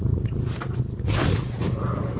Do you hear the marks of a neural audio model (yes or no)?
no